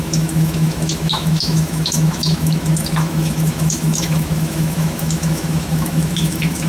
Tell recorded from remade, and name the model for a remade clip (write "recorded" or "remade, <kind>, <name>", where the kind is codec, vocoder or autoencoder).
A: remade, autoencoder, DAC-VAE